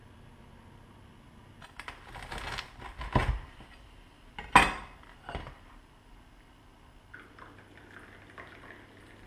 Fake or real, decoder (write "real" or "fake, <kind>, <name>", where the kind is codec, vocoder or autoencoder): real